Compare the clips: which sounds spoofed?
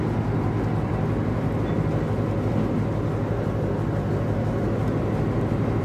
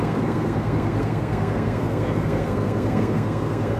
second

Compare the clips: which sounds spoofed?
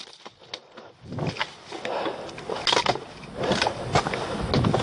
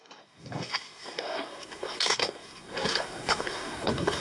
second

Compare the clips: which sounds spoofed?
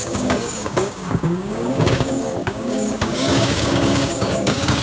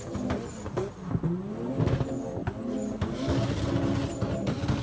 first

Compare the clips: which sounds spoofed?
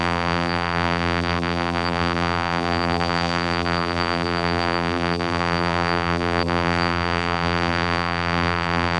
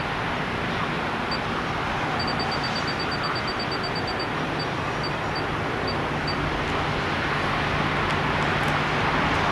first